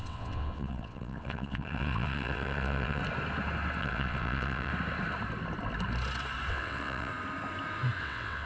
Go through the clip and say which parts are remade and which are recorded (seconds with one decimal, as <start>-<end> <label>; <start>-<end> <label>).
0.0-3.0 remade; 3.0-3.8 recorded; 3.8-4.7 remade; 4.7-6.5 recorded; 6.5-7.1 remade; 7.1-8.0 recorded; 8.0-8.5 remade